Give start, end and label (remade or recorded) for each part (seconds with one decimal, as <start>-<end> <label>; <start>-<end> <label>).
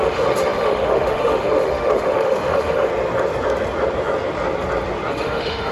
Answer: 0.0-2.9 remade; 2.9-5.1 recorded; 5.1-5.7 remade